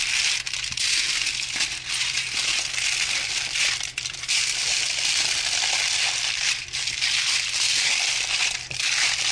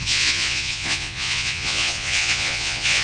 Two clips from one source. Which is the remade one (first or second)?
second